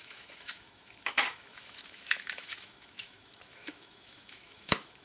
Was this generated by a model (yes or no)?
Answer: yes